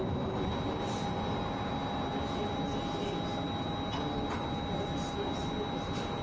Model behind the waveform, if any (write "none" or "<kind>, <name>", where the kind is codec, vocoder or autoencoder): none